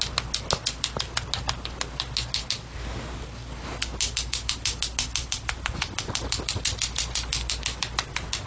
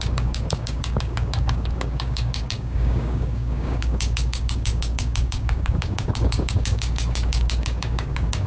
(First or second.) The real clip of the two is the first